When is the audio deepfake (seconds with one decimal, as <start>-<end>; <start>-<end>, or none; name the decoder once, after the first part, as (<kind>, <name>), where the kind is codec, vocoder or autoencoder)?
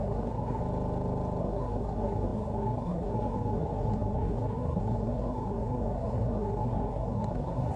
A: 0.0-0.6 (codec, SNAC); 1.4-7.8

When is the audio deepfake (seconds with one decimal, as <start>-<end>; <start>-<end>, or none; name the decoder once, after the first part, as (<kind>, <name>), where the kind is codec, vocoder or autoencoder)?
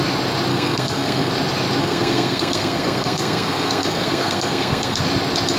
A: 0.5-1.3 (codec, SNAC); 1.8-5.0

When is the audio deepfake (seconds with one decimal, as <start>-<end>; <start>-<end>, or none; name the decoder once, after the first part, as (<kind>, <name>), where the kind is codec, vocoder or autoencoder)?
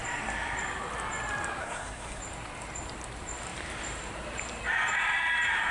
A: 1.6-2.2 (codec, SNAC)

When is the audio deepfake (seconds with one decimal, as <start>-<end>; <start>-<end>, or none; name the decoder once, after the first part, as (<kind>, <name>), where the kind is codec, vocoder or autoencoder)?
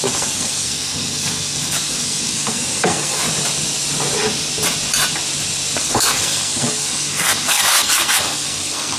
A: 0.0-3.2 (codec, SNAC); 5.8-9.0